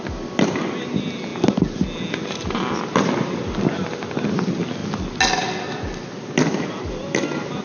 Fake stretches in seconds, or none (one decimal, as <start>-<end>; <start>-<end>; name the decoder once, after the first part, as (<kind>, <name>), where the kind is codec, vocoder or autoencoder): none